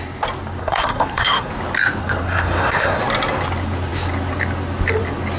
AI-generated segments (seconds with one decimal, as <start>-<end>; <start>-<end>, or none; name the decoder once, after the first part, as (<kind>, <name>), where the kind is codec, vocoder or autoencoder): 0.6-1.5 (codec, SNAC); 2.0-3.0